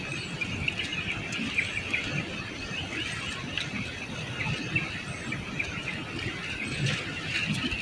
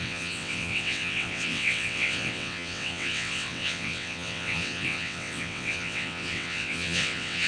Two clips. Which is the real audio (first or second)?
first